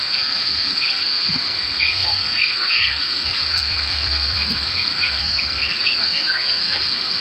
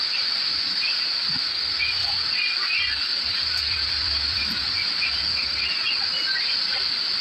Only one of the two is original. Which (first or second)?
second